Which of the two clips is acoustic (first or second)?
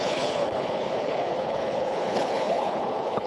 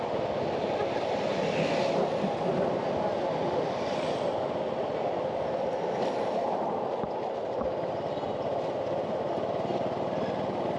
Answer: second